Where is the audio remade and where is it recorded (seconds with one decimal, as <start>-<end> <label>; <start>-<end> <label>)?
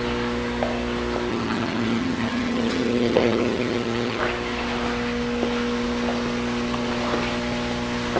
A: 0.0-1.3 recorded; 1.3-4.2 remade; 4.2-8.2 recorded